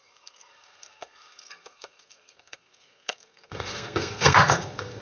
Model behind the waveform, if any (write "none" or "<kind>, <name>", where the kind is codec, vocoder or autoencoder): codec, SNAC